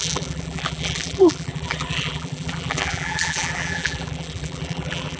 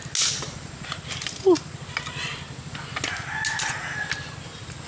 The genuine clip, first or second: second